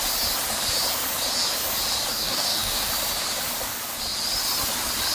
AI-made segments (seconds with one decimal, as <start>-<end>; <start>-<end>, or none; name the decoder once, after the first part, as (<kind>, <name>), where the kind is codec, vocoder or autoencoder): 2.1-2.9 (codec, DAC)